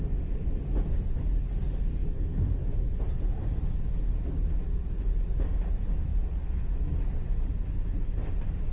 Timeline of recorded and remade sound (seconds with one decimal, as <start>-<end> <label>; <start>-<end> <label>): 0.0-8.7 recorded